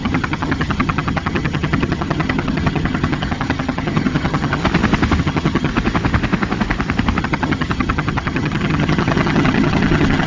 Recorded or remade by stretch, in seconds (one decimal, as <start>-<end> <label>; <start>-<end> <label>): 0.0-4.6 remade; 4.6-5.2 recorded; 5.2-5.7 remade; 5.7-7.2 recorded; 7.2-10.3 remade